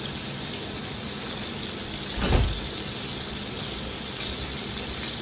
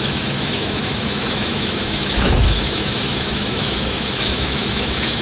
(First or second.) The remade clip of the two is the second